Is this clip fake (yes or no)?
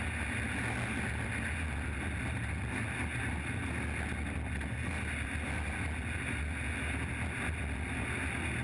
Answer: no